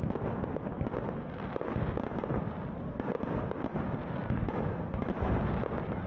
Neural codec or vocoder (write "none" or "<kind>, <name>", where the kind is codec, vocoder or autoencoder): none